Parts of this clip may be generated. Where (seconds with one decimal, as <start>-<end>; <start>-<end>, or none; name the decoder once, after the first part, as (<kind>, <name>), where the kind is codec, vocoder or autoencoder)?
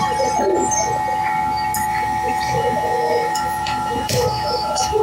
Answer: 1.9-5.0 (autoencoder, DAC-VAE)